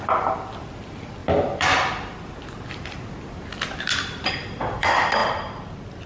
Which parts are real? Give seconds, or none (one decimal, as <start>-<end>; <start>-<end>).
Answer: 3.5-4.2; 5.2-6.1